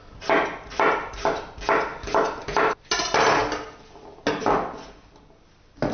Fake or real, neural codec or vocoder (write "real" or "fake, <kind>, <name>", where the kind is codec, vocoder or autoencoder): real